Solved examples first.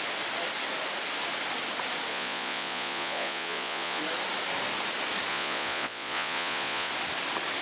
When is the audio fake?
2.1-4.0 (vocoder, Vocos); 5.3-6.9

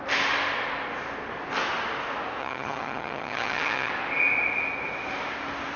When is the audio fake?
2.4-3.9 (vocoder, HiFi-GAN)

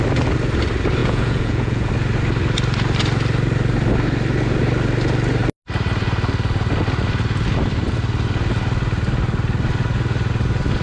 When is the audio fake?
1.0-1.9 (vocoder, Vocos)